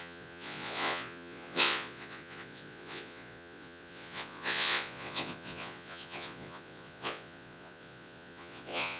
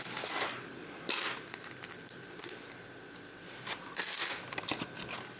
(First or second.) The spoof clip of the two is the first